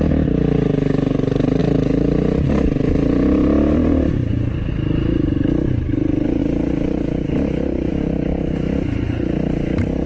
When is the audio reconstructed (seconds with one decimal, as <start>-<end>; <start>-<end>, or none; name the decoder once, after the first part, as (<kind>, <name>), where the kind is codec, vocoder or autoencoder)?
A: none